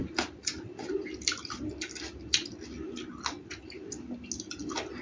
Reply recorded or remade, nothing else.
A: recorded